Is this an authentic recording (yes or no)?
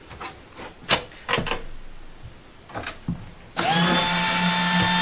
yes